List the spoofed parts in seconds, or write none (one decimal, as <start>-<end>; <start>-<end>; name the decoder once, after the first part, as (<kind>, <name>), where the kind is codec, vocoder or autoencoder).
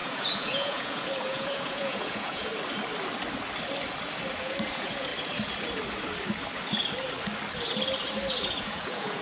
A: 0.0-2.5 (vocoder, Vocos); 4.4-5.1; 8.6-9.2